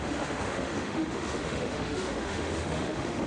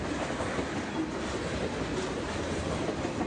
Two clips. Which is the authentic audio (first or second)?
second